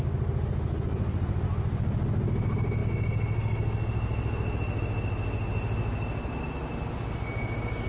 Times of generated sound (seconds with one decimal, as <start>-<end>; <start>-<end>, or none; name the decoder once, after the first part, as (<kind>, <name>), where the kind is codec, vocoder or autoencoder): none